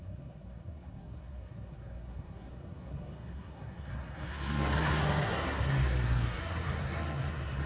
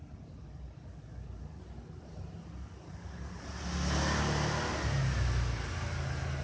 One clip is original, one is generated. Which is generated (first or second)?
first